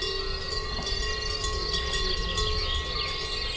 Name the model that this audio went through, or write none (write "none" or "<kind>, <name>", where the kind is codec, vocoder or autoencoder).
none